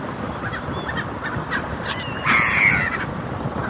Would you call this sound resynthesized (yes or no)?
no